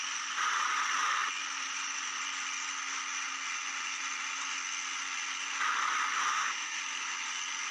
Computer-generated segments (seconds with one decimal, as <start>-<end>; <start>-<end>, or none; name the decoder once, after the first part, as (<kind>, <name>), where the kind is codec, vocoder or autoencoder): 6.3-6.8 (autoencoder, DAC-VAE)